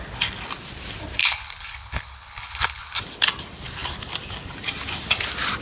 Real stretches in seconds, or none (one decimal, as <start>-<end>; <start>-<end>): 0.0-1.2; 3.0-5.6